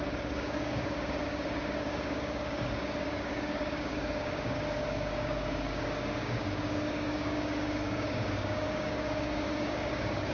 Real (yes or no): no